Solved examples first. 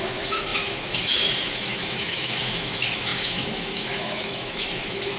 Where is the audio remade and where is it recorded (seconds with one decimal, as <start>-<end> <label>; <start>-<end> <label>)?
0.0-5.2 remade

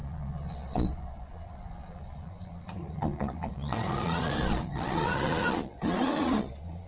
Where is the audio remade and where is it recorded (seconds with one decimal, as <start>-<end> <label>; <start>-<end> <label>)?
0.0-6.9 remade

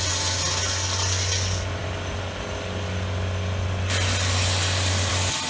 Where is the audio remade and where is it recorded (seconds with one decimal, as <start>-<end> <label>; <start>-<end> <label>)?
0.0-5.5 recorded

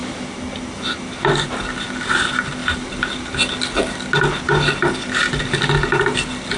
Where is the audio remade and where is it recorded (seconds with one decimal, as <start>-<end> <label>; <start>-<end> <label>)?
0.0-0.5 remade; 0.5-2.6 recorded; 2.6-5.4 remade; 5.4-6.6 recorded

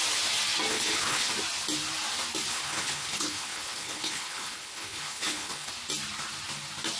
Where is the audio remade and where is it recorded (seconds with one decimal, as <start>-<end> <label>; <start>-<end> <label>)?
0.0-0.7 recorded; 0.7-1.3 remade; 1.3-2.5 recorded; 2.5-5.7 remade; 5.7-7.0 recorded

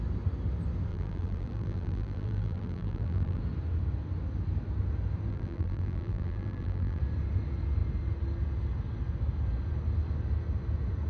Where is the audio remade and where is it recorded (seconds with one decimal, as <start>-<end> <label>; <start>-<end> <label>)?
0.0-0.9 recorded; 0.9-3.4 remade; 3.4-5.3 recorded; 5.3-7.0 remade; 7.0-11.1 recorded